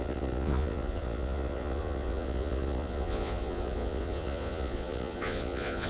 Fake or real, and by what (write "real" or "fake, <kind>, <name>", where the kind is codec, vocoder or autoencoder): fake, vocoder, Vocos